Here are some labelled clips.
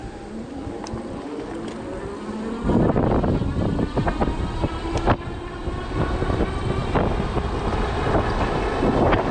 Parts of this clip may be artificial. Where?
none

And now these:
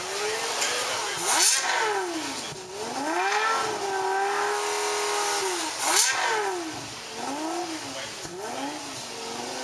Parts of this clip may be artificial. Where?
none

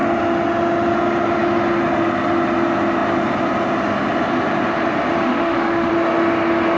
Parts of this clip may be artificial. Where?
5.2-5.9

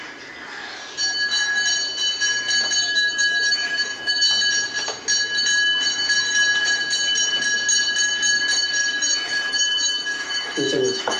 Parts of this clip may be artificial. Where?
2.9-4.3; 8.8-11.2

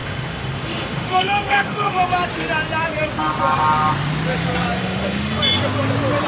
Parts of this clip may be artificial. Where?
0.0-2.0; 4.8-5.4

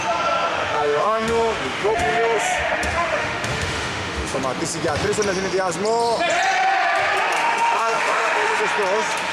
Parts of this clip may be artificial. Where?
0.5-4.4; 7.4-8.6

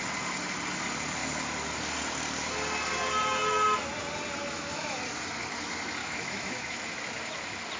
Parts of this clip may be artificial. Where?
4.4-5.0; 6.0-6.8